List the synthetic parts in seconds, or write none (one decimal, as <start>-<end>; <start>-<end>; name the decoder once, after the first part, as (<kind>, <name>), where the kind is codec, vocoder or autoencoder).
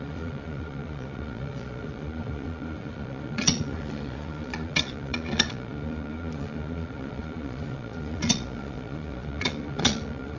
0.0-10.4 (vocoder, Vocos)